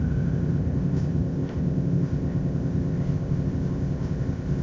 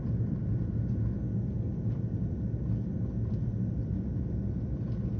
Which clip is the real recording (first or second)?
second